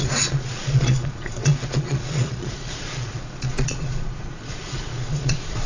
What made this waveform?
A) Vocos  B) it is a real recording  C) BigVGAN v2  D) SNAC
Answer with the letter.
A